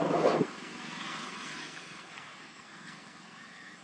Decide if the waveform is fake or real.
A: fake